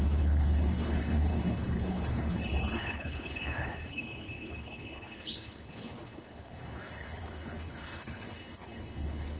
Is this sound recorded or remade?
remade